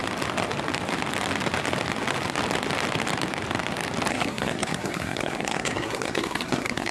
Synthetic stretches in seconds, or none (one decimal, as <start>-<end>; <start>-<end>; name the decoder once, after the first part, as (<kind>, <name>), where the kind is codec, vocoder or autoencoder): 4.1-6.9 (codec, SNAC)